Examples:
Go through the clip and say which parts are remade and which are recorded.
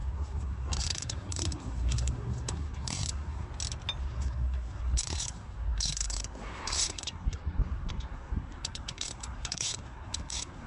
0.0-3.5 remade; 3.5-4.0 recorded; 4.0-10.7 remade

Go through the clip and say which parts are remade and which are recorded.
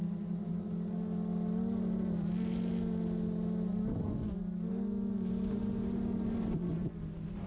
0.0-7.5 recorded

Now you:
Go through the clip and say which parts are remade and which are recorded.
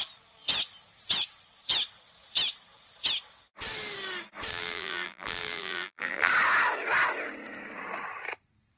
0.0-4.5 recorded; 4.5-6.3 remade; 6.3-8.8 recorded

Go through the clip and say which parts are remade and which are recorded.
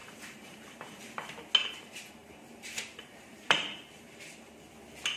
0.0-1.0 remade; 1.0-1.6 recorded; 1.6-4.7 remade; 4.7-5.2 recorded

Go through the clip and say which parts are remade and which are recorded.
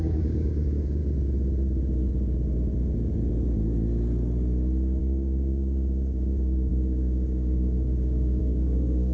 0.0-1.0 remade; 1.0-5.0 recorded; 5.0-9.1 remade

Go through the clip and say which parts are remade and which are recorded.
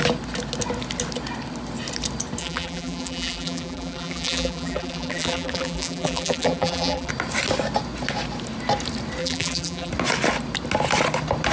0.0-2.4 recorded; 2.4-7.1 remade; 7.1-9.2 recorded; 9.2-9.9 remade; 9.9-11.5 recorded